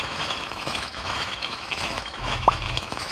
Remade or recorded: remade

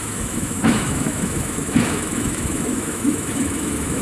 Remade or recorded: remade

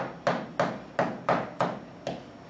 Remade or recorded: recorded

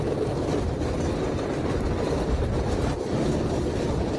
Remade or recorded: recorded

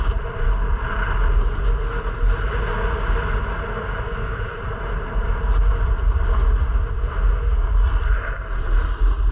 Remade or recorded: recorded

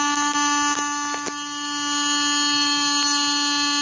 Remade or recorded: recorded